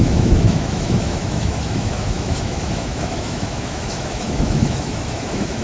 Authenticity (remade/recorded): remade